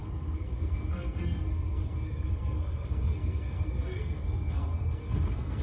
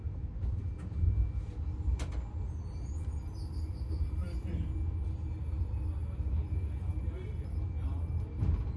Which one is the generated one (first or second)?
first